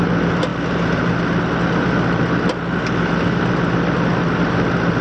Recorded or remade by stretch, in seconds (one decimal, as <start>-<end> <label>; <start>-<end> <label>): 0.0-5.0 recorded